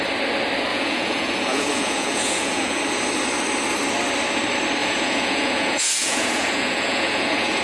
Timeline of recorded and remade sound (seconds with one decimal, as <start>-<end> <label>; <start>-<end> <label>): 0.0-0.7 recorded; 0.7-2.8 remade; 2.8-4.8 recorded; 4.8-7.6 remade